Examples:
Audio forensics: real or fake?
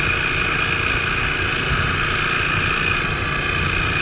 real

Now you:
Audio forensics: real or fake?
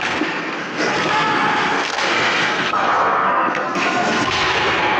fake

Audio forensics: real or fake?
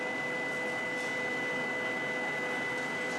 real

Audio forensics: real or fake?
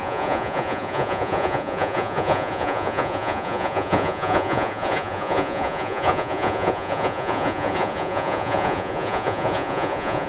fake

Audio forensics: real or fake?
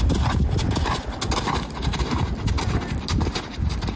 real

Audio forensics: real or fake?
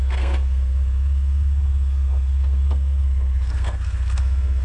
fake